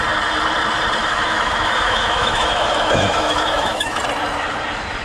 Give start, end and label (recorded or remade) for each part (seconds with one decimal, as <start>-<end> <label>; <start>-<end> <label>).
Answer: 0.0-1.0 recorded; 1.0-4.0 remade; 4.0-5.0 recorded